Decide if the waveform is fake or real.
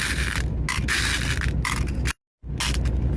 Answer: real